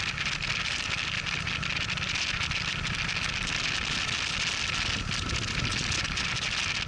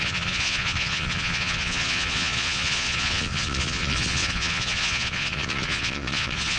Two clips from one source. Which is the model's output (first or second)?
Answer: second